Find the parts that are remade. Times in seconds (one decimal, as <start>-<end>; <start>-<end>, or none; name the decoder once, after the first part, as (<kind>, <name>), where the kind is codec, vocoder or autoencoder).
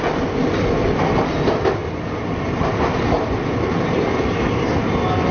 none